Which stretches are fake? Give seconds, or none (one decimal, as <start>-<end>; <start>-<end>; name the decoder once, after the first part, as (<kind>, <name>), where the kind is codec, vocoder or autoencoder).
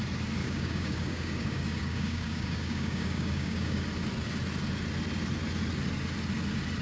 0.4-3.8 (codec, DAC)